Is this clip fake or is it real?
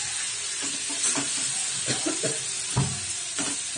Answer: real